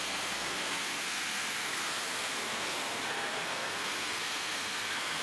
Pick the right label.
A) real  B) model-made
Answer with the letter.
B